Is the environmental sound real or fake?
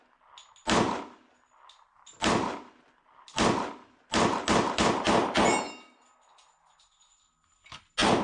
real